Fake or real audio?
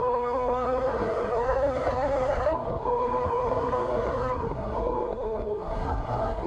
fake